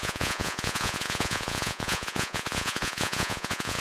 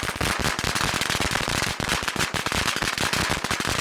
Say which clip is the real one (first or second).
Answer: second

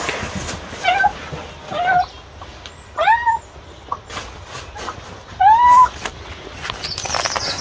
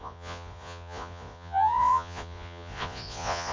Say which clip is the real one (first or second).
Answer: first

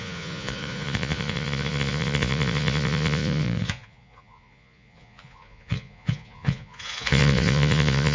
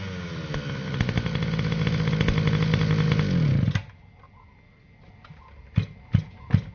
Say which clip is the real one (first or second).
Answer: second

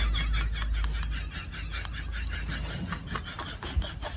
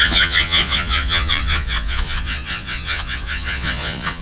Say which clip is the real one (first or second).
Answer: first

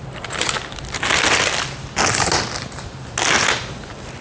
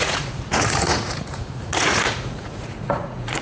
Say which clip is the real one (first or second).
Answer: first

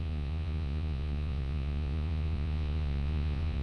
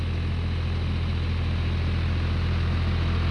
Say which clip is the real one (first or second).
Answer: second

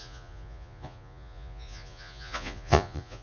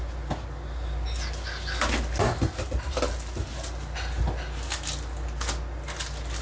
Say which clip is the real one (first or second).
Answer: second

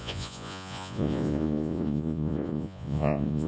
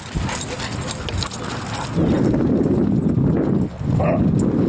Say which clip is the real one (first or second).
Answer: second